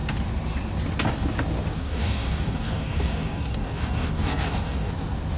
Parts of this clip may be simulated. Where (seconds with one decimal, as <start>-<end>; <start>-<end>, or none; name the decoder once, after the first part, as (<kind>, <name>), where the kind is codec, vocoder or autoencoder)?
1.7-4.9 (codec, DAC)

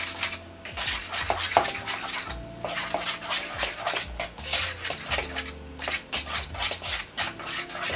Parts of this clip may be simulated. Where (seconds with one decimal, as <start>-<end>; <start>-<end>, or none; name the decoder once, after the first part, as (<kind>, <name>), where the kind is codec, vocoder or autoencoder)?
none

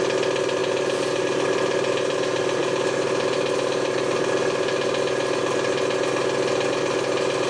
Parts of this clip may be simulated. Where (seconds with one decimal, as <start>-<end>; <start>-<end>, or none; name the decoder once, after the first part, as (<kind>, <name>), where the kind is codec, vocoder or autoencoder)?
none

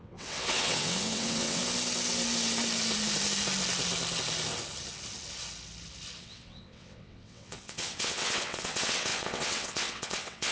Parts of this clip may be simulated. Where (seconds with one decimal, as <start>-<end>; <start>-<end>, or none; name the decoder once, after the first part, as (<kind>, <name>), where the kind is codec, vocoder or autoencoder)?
0.0-1.6 (vocoder, WaveNeXt); 6.2-10.5

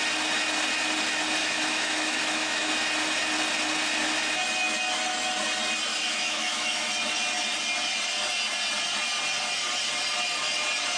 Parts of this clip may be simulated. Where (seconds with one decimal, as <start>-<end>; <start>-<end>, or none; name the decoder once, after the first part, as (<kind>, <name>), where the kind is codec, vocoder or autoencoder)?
1.4-2.7 (autoencoder, DAC-VAE); 5.9-6.9

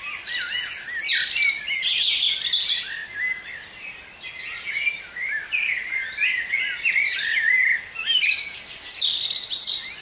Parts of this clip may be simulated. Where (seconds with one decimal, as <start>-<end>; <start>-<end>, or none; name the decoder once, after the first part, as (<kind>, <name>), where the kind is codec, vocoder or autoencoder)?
0.0-0.7 (vocoder, BigVGAN v2); 1.8-3.0; 4.2-10.0

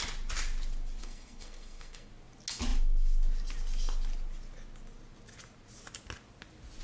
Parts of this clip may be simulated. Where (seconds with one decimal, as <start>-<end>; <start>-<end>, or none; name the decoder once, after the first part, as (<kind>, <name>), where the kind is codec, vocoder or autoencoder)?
1.0-2.1 (codec, SNAC)

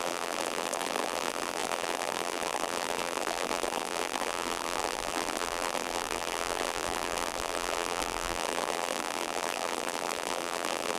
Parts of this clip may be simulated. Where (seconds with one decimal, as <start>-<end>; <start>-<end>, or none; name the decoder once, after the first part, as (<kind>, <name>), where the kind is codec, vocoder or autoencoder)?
0.0-11.0 (vocoder, BigVGAN v2)